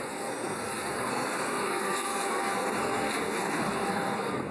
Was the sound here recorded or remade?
remade